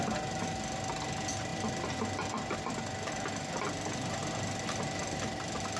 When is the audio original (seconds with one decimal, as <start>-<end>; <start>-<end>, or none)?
0.0-5.8